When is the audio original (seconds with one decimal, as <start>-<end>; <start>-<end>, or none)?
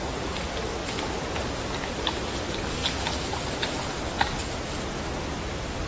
0.0-5.9